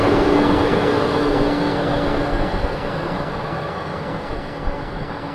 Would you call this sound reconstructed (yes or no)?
yes